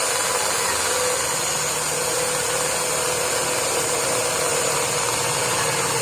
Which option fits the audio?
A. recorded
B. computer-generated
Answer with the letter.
A